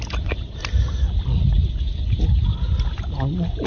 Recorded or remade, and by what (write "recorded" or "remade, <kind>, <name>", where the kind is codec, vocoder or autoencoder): recorded